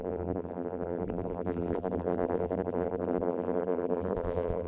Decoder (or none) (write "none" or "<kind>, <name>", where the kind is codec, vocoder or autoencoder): vocoder, BigVGAN v2